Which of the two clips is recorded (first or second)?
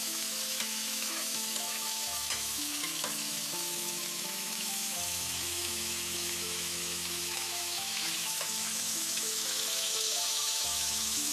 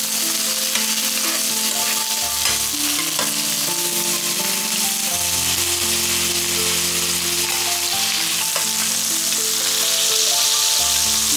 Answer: second